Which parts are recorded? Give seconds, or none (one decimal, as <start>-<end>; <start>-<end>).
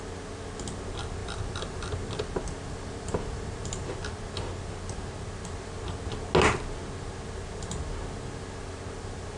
0.0-1.2; 3.9-9.4